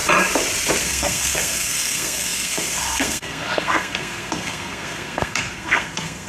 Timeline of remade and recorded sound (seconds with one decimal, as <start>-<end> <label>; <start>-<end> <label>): 0.0-0.8 recorded; 0.8-6.3 remade